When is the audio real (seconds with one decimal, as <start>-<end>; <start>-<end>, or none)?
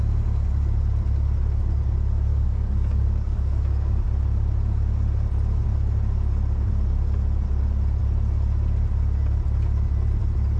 0.0-2.3; 4.0-10.6